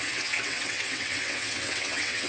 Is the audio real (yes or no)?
no